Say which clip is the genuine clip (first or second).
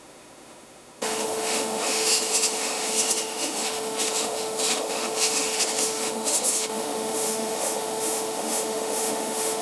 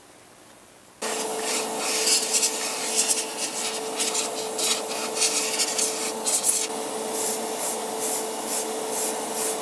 second